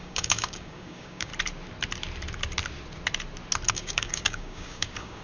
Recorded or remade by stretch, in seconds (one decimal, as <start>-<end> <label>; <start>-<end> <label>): 0.0-1.3 remade; 1.3-3.7 recorded; 3.7-5.2 remade